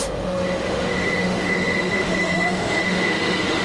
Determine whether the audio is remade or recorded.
remade